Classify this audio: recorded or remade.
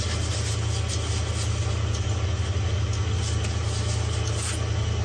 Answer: recorded